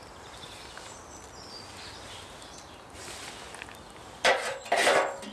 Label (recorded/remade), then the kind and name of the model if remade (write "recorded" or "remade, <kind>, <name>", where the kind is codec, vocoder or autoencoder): recorded